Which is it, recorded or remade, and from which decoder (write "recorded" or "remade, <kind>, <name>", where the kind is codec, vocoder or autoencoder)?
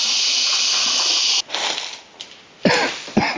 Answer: recorded